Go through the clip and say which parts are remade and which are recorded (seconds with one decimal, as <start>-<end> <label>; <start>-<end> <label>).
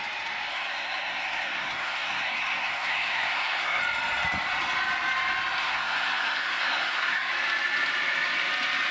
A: 0.0-0.5 recorded; 0.5-3.8 remade; 3.8-5.6 recorded; 5.6-7.3 remade; 7.3-8.9 recorded